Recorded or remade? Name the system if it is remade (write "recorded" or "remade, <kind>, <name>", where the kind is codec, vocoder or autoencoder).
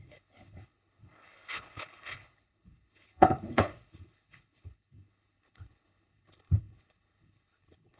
remade, codec, HILCodec